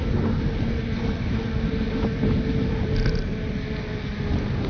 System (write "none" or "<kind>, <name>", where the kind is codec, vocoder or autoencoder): none